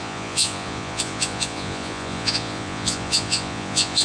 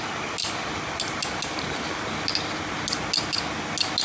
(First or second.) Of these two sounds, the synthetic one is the first